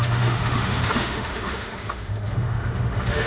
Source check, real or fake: fake